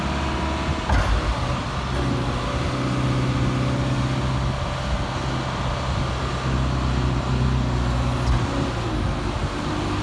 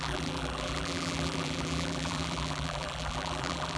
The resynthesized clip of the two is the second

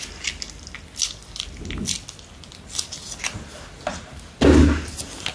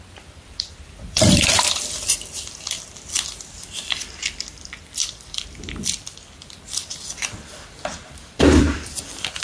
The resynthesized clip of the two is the second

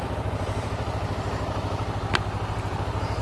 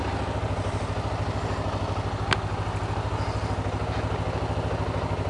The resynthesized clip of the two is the first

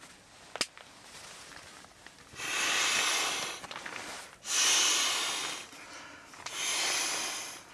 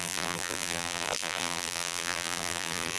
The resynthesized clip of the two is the second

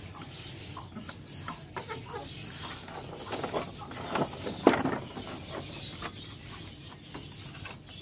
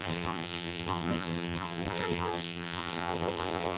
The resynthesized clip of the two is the second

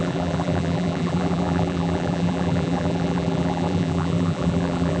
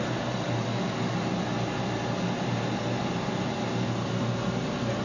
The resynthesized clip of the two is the first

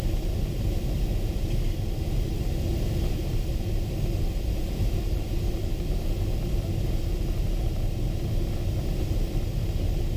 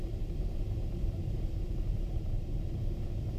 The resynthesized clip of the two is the second